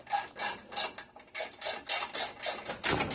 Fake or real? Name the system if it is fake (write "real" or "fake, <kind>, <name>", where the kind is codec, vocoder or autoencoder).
real